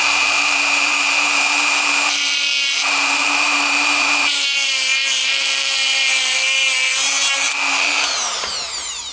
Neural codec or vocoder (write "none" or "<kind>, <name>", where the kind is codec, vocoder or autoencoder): vocoder, BigVGAN v2